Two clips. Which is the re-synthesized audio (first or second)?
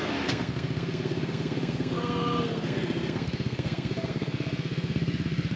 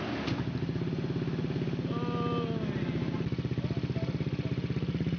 first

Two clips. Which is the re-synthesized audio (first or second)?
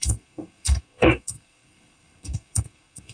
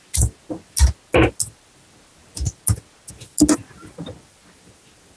first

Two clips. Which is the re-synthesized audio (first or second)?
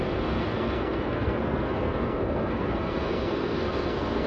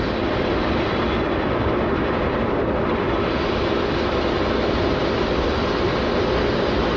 first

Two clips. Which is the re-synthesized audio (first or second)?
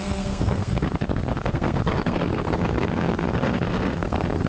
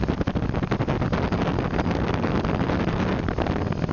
first